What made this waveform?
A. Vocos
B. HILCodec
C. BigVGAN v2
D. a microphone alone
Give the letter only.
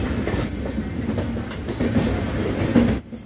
D